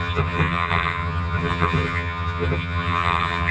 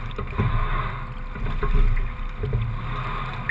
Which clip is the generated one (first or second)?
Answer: first